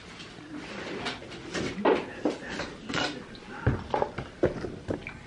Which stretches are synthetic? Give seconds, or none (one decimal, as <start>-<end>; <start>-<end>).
none